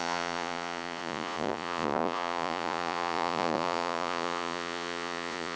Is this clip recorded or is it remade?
remade